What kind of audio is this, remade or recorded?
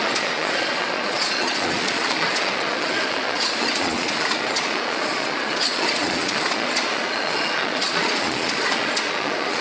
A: remade